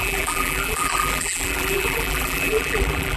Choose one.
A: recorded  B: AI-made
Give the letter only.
B